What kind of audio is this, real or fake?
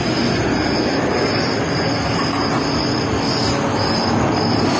real